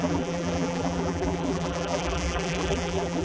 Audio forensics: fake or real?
fake